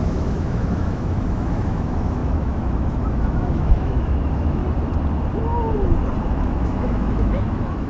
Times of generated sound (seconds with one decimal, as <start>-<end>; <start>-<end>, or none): 0.0-4.6; 6.2-7.9